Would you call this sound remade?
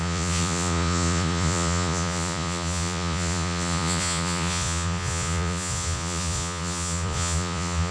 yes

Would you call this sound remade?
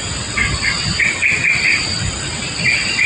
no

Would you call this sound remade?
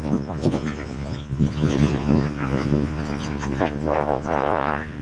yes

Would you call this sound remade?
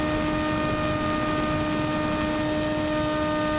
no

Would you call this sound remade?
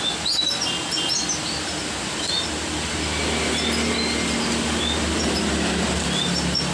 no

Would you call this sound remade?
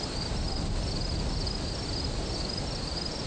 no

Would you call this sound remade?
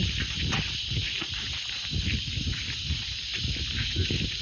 no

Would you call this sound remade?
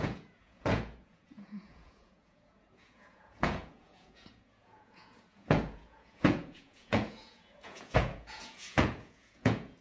yes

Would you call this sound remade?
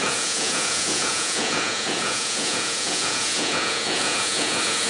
yes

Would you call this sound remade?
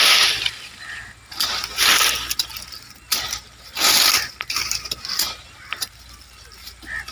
no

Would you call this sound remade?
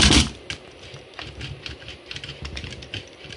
no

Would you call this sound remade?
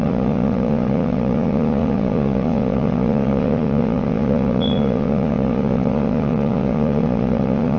yes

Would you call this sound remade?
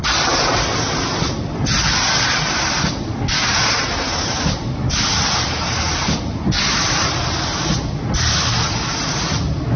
no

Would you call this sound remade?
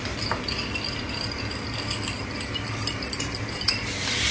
no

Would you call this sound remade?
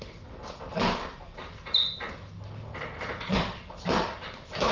no